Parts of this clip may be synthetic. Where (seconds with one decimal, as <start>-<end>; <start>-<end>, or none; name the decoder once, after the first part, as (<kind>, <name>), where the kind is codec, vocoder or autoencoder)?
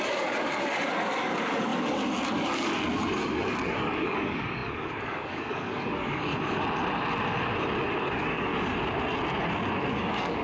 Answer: 0.0-6.3 (codec, DAC); 8.0-8.5; 9.9-10.4